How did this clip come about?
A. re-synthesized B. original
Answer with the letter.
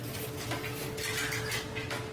B